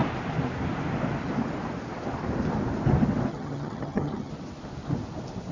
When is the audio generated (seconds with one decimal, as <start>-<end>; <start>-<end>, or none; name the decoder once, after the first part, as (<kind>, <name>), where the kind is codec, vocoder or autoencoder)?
3.3-4.3 (vocoder, HiFi-GAN)